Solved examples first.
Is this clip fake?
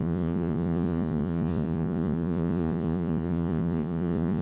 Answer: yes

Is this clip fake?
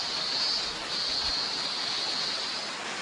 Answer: no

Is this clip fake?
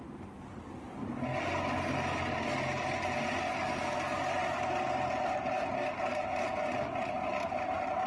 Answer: no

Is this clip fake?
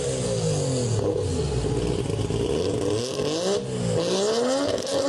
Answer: no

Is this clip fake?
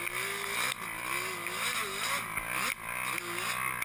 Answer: no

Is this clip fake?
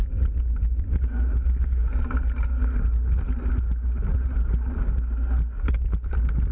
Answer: no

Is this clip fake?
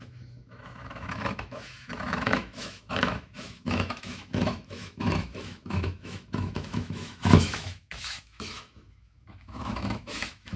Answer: yes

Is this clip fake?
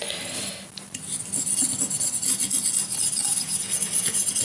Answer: no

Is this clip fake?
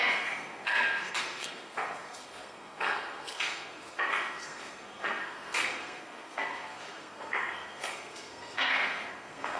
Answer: yes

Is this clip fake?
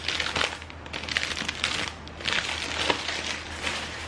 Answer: no